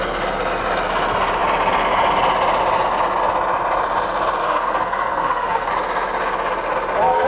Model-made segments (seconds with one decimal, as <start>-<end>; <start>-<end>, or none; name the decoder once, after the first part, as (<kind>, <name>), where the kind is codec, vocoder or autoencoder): 4.4-5.7 (codec, SNAC)